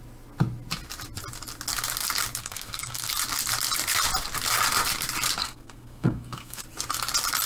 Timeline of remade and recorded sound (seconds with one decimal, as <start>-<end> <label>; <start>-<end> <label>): 0.0-2.4 recorded; 2.4-3.1 remade; 3.1-5.4 recorded; 5.4-6.6 remade; 6.6-7.5 recorded